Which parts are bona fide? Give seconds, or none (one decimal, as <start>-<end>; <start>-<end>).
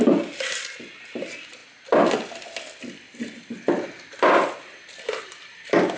0.0-6.0